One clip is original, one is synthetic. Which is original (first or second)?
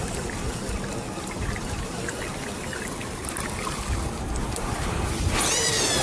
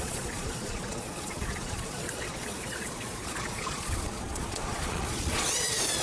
first